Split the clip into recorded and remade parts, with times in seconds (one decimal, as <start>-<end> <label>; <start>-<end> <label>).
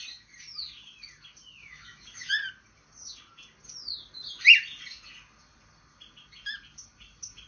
0.0-1.6 recorded; 1.6-2.3 remade; 2.3-7.5 recorded